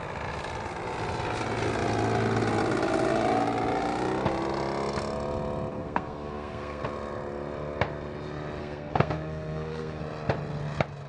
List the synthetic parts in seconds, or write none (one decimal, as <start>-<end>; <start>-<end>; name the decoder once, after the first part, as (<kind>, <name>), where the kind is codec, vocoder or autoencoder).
5.7-6.8 (codec, SNAC); 8.6-10.0